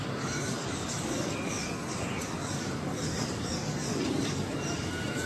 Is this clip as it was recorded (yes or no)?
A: no